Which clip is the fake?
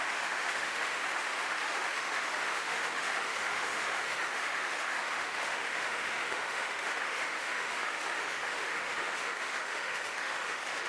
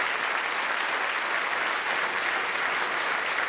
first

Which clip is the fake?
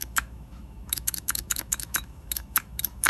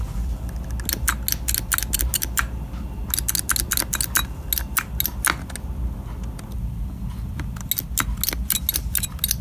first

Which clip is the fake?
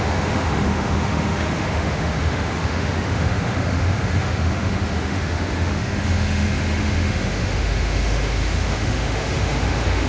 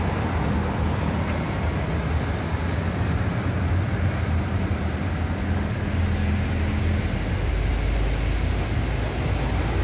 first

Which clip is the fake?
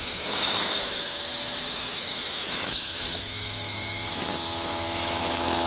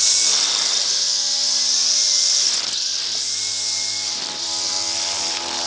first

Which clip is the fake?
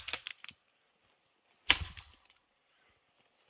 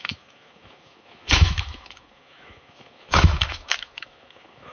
second